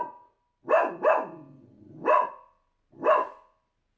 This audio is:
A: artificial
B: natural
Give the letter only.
B